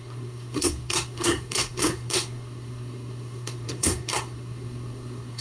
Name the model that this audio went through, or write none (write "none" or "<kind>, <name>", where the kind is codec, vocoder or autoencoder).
codec, SNAC